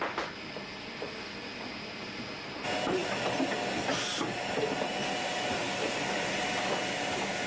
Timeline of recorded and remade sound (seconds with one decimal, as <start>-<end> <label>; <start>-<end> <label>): 0.0-7.5 recorded